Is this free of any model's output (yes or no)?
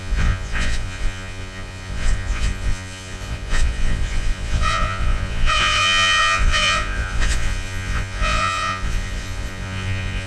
no